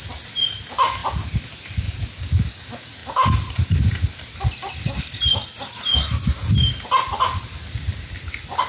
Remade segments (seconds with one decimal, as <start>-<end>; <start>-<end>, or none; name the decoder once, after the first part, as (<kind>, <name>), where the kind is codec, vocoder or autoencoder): none